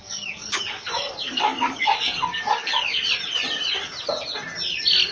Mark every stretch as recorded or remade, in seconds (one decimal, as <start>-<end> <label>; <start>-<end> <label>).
0.0-3.1 remade; 3.1-5.1 recorded